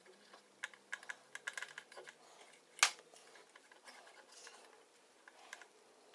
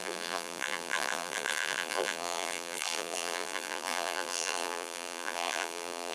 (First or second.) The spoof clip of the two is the second